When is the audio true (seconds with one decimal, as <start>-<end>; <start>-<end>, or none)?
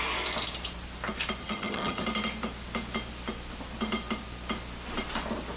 0.0-1.4; 2.0-5.6